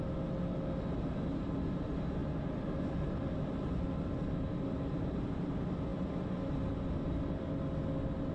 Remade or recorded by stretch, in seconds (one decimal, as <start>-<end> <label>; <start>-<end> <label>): 0.0-8.3 recorded